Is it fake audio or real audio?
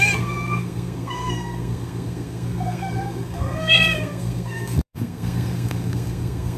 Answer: fake